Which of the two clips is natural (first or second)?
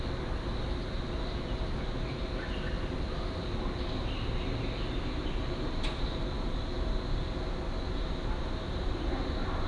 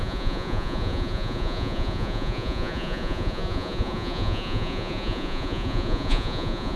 first